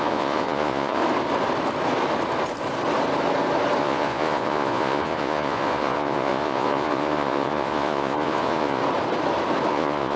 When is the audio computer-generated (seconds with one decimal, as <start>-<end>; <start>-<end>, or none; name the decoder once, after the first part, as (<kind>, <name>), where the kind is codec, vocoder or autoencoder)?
0.0-1.0 (vocoder, Vocos); 3.8-8.8; 9.7-10.2